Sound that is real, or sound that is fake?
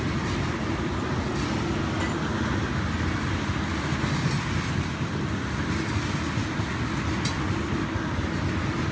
real